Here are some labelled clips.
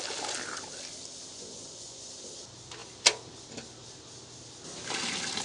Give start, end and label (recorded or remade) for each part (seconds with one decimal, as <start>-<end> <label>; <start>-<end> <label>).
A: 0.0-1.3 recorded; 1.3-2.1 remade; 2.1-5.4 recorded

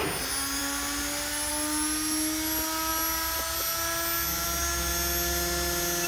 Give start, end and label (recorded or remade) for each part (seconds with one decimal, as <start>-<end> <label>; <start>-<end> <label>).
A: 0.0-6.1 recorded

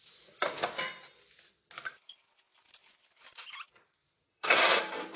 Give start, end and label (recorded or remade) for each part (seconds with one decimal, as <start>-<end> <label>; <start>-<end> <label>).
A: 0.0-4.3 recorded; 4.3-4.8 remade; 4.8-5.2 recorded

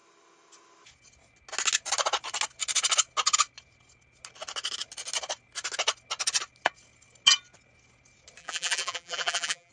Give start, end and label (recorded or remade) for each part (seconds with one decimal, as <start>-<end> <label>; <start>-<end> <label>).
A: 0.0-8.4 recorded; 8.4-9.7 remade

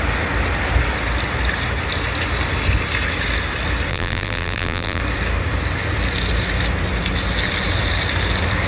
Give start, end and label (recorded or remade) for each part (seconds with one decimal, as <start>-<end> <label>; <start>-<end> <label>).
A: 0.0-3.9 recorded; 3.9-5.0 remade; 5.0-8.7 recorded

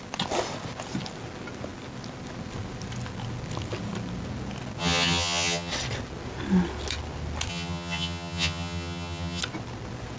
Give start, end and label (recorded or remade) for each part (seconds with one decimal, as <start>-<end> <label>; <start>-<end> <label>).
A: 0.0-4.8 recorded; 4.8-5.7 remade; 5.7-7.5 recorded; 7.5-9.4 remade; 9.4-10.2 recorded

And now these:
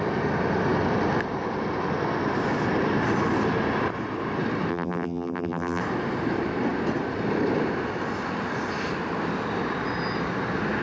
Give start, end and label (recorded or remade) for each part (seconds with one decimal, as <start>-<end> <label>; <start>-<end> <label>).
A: 0.0-4.7 recorded; 4.7-5.8 remade; 5.8-10.8 recorded